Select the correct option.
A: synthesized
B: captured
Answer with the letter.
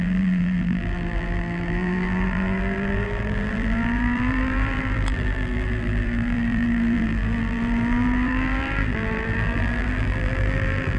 A